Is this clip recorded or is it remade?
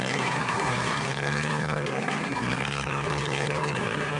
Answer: remade